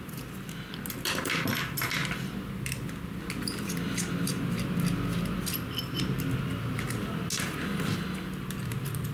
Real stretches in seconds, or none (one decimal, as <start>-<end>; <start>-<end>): 0.0-9.1